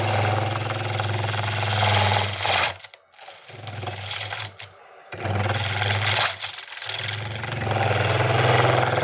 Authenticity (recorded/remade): recorded